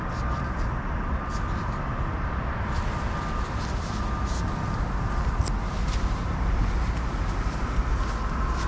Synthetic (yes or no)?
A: no